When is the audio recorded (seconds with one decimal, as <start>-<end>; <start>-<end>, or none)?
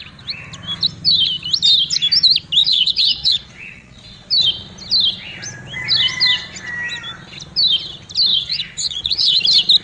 0.0-2.6; 4.3-8.3; 9.4-9.8